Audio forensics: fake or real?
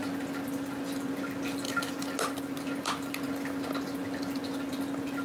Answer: real